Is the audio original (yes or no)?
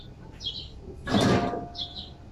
no